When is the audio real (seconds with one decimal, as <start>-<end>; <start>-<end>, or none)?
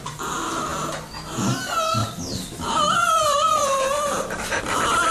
0.0-2.0